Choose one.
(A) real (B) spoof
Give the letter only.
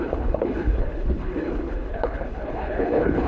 B